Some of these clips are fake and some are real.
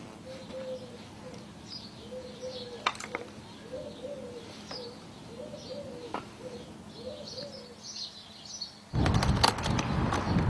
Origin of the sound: real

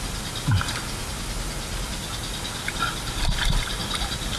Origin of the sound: real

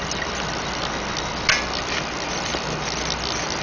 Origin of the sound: real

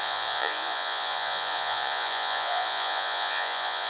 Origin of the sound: fake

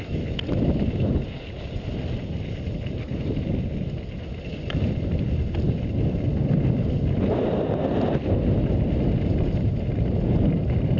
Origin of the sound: real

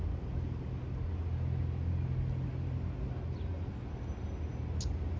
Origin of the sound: real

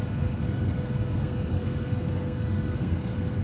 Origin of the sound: fake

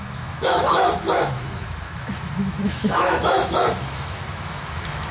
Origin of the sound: fake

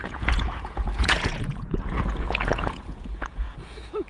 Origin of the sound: fake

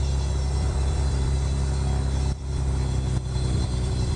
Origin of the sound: fake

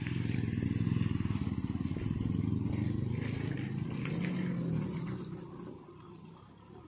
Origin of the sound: real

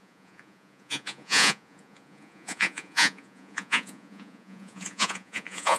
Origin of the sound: fake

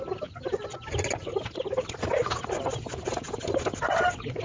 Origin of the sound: real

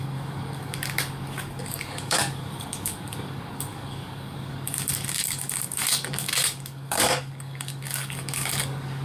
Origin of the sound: fake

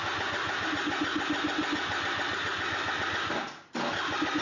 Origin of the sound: real